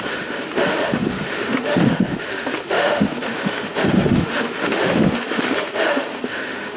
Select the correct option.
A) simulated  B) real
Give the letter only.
A